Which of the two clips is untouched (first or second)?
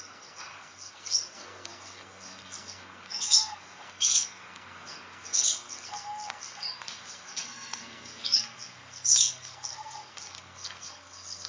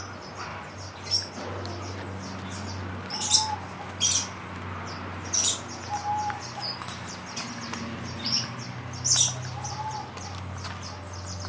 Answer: second